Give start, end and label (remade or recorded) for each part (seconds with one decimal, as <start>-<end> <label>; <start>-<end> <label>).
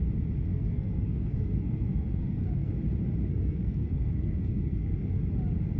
0.0-0.5 recorded; 0.5-2.7 remade; 2.7-3.3 recorded; 3.3-5.2 remade; 5.2-5.8 recorded